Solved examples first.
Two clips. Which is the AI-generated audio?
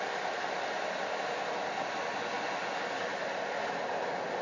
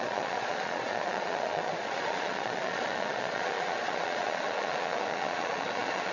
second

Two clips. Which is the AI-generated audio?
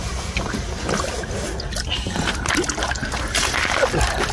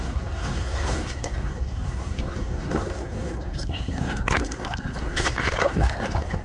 second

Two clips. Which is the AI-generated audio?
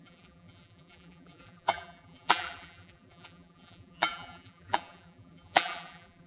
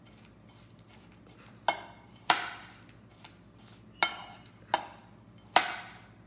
first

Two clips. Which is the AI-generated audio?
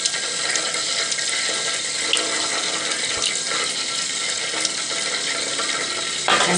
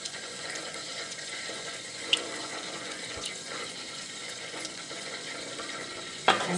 second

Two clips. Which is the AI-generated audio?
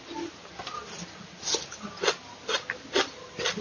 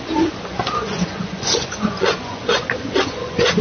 second